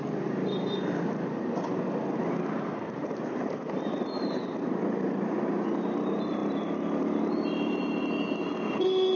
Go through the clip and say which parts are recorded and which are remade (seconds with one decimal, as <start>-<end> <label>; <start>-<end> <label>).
0.0-9.2 recorded